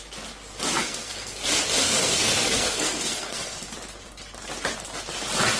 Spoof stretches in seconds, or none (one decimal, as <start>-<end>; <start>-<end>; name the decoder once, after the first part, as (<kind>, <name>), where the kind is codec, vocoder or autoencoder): 0.8-1.4 (codec, SNAC); 1.8-3.6